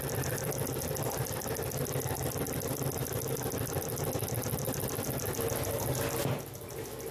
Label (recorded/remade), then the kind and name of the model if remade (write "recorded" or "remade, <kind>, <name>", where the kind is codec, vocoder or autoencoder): recorded